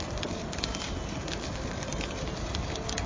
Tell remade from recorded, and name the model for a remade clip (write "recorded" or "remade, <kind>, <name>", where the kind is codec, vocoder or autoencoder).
recorded